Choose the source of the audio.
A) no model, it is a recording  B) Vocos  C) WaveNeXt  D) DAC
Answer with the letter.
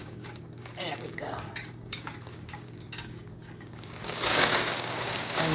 D